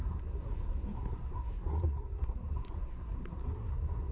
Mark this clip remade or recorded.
remade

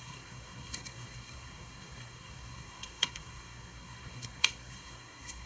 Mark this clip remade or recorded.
remade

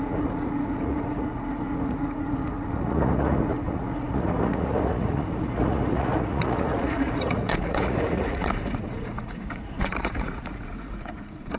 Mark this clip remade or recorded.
remade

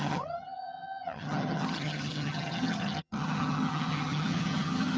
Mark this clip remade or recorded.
remade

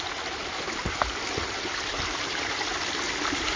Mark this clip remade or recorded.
recorded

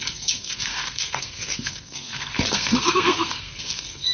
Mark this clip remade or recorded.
remade